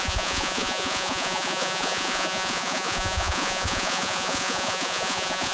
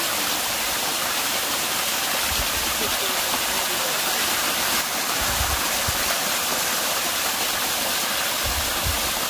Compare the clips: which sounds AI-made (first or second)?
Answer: first